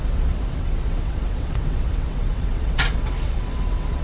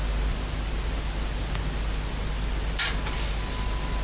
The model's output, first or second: first